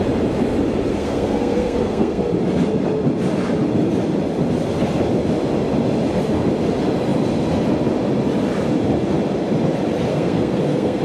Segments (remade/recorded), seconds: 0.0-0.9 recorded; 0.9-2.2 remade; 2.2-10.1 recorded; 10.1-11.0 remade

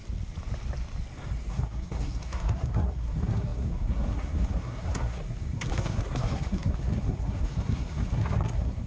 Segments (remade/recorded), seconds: 0.0-1.5 recorded; 1.5-8.9 remade